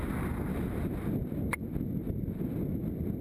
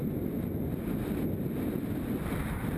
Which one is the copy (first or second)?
second